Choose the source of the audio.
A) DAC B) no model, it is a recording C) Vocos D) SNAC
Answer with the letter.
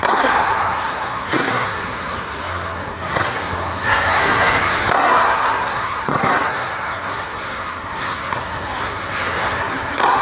D